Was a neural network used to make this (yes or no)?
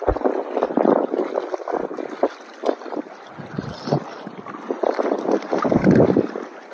no